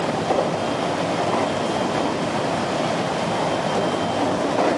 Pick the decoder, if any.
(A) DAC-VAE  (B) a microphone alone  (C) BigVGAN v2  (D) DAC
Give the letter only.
B